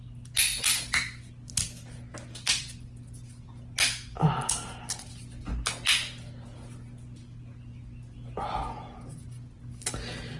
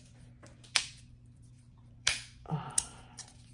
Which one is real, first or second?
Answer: first